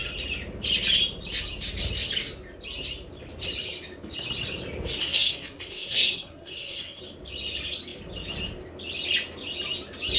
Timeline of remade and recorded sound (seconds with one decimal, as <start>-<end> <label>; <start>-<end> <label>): 0.0-5.0 recorded; 5.0-7.0 remade; 7.0-10.2 recorded